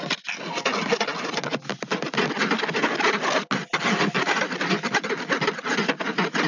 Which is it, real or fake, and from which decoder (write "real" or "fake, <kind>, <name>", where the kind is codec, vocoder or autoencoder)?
real